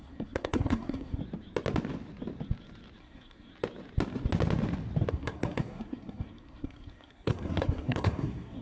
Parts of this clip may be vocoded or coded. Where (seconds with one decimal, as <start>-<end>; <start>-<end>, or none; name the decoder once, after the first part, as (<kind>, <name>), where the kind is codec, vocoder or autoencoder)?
0.0-1.2 (codec, SNAC); 3.0-3.5; 5.1-8.6